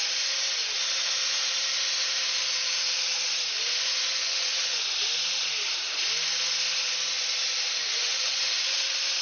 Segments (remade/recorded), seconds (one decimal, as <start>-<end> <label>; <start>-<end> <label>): 0.0-4.1 recorded; 4.1-4.9 remade; 4.9-7.8 recorded; 7.8-8.3 remade; 8.3-9.2 recorded